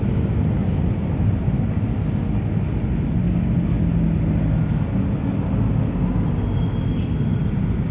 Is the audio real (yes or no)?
yes